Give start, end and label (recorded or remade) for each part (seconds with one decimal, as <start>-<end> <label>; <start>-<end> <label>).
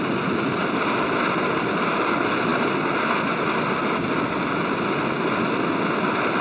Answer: 0.0-6.4 recorded